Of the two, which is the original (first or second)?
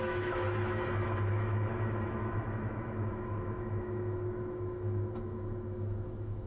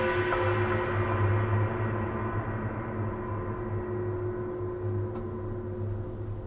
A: second